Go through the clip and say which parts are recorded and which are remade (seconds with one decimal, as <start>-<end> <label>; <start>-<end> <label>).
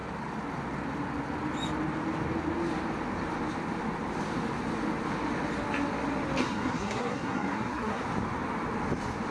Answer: 0.0-6.4 recorded; 6.4-8.0 remade; 8.0-9.3 recorded